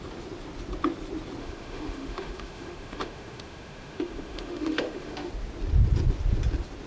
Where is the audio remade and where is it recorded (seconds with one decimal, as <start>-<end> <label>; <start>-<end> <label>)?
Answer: 0.0-1.4 recorded; 1.4-5.3 remade; 5.3-6.9 recorded